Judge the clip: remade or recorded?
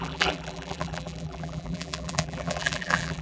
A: remade